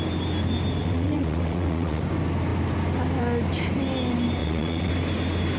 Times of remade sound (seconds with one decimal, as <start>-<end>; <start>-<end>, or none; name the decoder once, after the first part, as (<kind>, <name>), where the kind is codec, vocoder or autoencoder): 0.8-2.0 (vocoder, WaveNeXt); 4.4-4.9